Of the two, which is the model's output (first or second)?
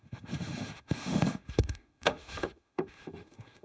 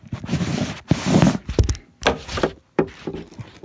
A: first